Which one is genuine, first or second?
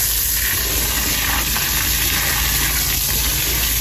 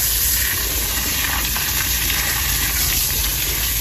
first